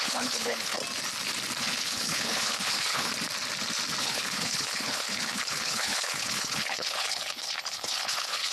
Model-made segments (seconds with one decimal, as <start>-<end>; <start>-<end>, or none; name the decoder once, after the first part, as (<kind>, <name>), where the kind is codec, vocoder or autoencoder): 0.0-0.8 (codec, HILCodec); 1.6-3.1; 4.0-8.5